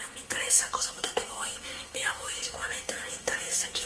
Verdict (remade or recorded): remade